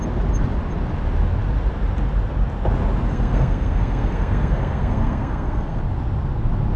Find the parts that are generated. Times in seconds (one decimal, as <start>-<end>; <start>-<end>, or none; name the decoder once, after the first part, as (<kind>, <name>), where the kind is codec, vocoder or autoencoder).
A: 3.1-5.8 (codec, SNAC)